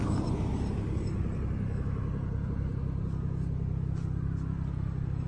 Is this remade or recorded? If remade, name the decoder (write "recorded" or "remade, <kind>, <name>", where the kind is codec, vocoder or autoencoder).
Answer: recorded